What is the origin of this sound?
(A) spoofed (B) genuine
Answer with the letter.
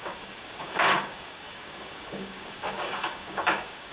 A